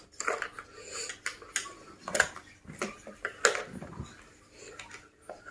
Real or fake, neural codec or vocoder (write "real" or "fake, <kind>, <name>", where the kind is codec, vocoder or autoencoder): real